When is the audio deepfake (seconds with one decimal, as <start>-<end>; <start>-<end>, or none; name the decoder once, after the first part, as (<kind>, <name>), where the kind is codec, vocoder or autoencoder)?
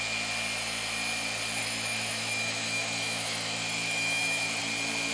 1.6-4.6 (autoencoder, DAC-VAE)